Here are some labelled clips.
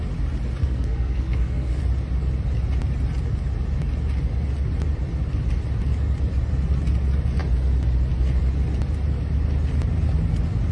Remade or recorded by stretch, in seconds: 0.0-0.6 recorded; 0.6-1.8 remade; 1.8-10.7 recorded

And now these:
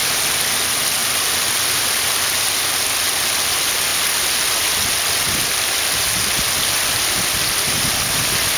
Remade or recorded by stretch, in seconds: 0.0-0.5 remade; 0.5-3.9 recorded; 3.9-4.6 remade; 4.6-8.6 recorded

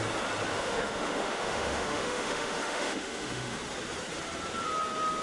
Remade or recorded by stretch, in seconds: 0.0-0.5 recorded; 0.5-3.6 remade; 3.6-5.2 recorded

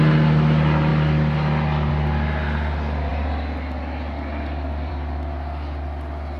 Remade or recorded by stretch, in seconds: 0.0-6.4 recorded

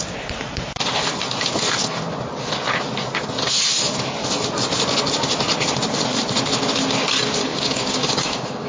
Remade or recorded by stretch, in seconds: 0.0-7.5 recorded; 7.5-8.7 remade

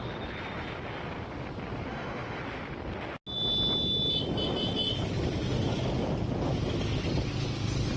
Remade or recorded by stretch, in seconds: 0.0-1.9 recorded; 1.9-2.4 remade; 2.4-8.0 recorded